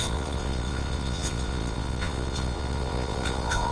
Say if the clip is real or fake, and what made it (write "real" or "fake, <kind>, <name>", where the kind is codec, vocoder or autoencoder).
fake, vocoder, Vocos